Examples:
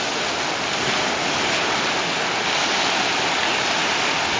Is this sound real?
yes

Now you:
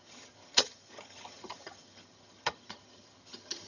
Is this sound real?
no